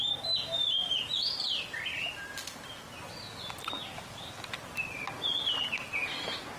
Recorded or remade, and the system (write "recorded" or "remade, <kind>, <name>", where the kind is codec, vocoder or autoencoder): recorded